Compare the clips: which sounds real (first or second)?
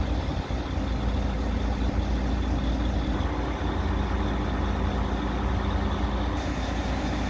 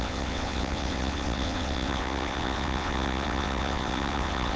first